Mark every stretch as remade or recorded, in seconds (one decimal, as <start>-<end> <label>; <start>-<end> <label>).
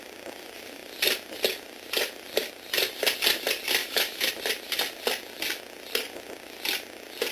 0.0-3.8 recorded; 3.8-4.3 remade; 4.3-7.3 recorded